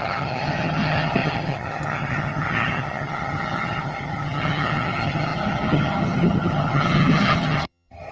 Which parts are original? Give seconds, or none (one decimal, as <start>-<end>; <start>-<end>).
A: none